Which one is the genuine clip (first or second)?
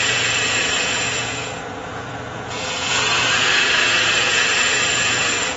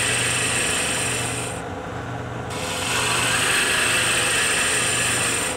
second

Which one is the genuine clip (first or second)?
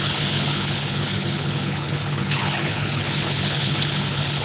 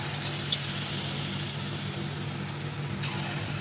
second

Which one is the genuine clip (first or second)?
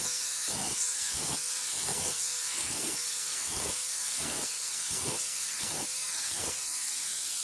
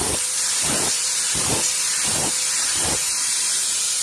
second